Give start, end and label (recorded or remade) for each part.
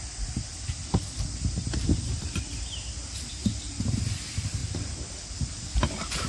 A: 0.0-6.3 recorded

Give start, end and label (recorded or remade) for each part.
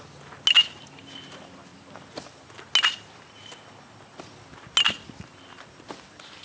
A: 0.0-6.4 recorded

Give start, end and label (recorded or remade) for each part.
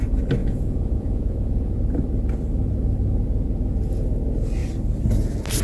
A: 0.0-0.4 recorded; 0.4-1.8 remade; 1.8-5.6 recorded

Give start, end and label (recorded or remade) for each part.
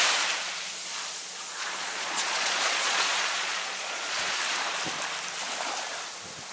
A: 0.0-0.9 recorded; 0.9-4.3 remade; 4.3-6.5 recorded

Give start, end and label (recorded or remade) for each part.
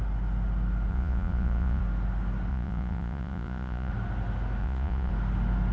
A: 0.0-0.9 recorded; 0.9-1.8 remade; 1.8-2.5 recorded; 2.5-3.9 remade; 3.9-4.6 recorded; 4.6-5.1 remade; 5.1-5.7 recorded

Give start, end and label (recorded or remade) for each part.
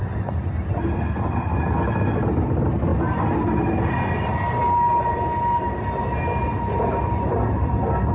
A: 0.0-8.1 recorded